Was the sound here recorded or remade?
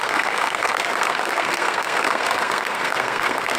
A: remade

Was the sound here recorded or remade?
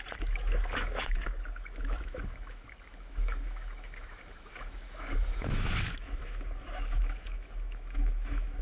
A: remade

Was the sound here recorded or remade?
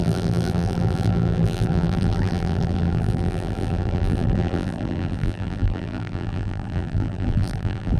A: remade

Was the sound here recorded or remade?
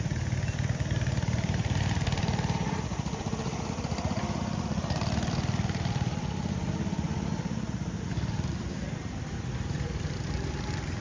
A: remade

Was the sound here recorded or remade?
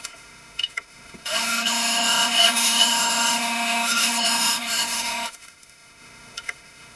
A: remade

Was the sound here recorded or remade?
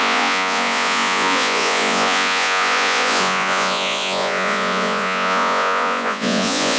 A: remade